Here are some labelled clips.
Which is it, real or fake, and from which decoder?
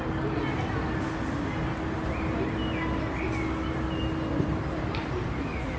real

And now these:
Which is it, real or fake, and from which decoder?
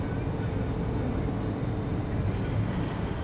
real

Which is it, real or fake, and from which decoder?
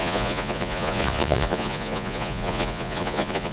fake, vocoder, Vocos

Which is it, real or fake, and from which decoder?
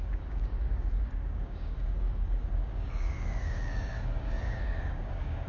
fake, codec, DAC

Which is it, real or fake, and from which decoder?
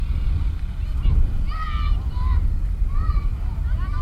fake, vocoder, BigVGAN v2